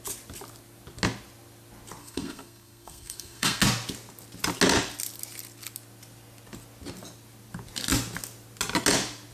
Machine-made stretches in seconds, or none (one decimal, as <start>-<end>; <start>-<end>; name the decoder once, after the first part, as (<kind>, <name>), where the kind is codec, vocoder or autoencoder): 2.0-3.6 (codec, SNAC)

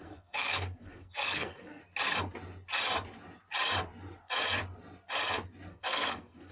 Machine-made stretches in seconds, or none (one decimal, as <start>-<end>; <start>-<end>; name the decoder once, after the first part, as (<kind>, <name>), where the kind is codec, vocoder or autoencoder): 0.0-1.8 (codec, SNAC); 5.7-6.5